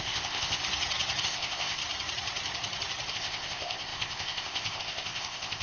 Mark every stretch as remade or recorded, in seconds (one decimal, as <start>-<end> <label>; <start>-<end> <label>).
0.0-0.6 remade; 0.6-1.2 recorded; 1.2-1.8 remade; 1.8-3.1 recorded; 3.1-5.6 remade